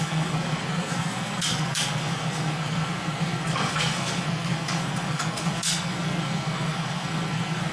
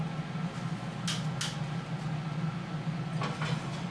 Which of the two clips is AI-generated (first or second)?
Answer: first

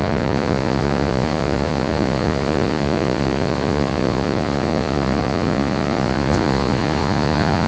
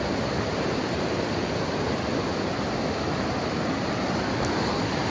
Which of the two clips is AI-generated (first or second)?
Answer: first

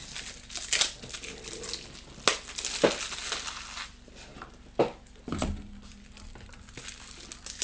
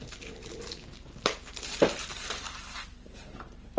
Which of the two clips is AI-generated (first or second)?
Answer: second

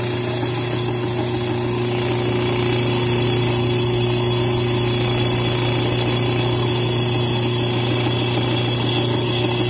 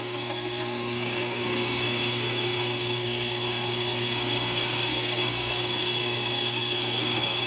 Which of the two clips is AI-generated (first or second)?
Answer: second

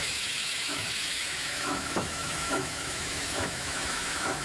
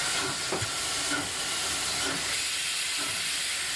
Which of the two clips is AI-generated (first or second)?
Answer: first